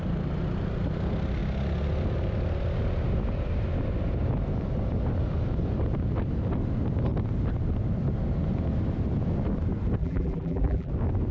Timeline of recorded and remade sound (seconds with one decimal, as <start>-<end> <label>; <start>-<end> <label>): 0.0-10.0 recorded; 10.0-10.9 remade; 10.9-11.3 recorded